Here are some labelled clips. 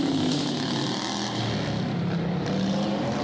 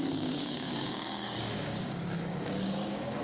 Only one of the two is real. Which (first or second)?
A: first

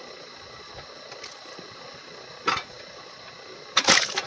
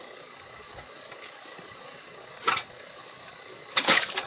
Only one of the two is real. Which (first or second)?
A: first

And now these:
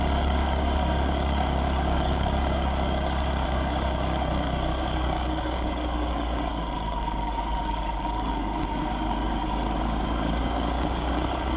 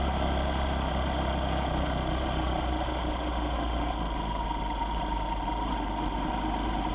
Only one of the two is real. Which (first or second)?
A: second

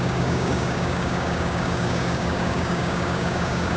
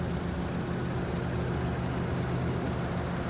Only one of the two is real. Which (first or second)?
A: second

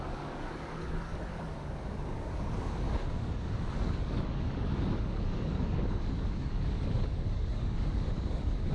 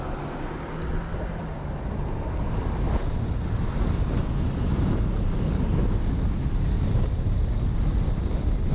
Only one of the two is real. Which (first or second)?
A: second